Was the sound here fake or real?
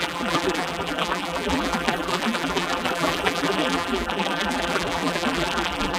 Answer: fake